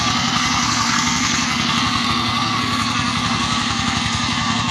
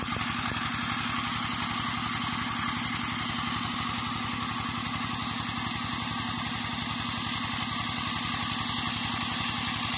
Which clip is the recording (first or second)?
second